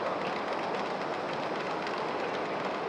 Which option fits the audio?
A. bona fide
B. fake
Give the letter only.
A